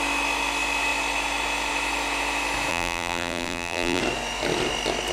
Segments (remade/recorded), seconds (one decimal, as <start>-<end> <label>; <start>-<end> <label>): 0.0-2.7 recorded; 2.7-4.0 remade; 4.0-5.1 recorded